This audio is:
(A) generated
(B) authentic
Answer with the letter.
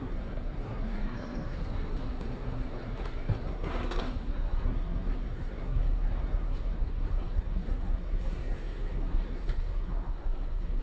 A